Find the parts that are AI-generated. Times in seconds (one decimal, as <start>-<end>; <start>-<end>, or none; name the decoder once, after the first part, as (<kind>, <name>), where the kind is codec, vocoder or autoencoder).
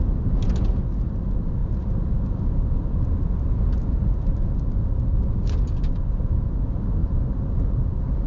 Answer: 1.6-6.3 (vocoder, BigVGAN v2); 7.0-8.3